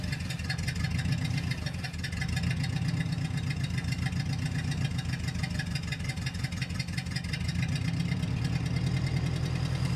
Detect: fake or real real